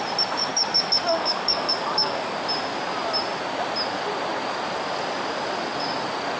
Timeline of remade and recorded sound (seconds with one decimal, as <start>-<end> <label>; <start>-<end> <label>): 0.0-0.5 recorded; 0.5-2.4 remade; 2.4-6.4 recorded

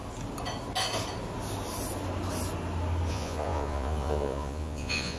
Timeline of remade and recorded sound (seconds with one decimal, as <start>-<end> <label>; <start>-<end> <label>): 0.0-3.1 recorded; 3.1-5.2 remade

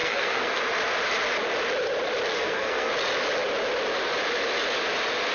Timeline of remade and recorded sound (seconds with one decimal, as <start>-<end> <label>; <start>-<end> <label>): 0.0-0.6 remade; 0.6-2.3 recorded; 2.3-2.9 remade; 2.9-5.3 recorded